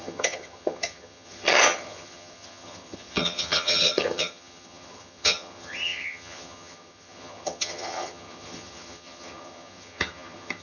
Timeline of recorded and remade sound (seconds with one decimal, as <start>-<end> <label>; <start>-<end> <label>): 0.0-10.6 remade